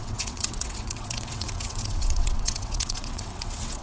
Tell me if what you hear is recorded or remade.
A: remade